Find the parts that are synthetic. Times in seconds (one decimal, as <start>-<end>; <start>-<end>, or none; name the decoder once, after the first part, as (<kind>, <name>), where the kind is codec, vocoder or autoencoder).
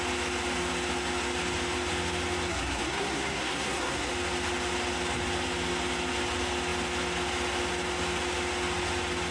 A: 2.5-4.1 (codec, SNAC)